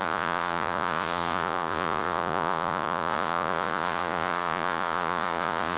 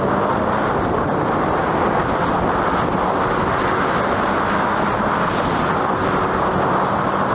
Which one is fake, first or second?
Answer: first